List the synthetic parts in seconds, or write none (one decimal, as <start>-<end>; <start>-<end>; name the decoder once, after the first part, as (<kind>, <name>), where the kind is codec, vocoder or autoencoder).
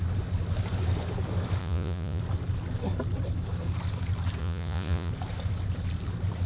1.6-2.2 (vocoder, Vocos); 4.4-5.1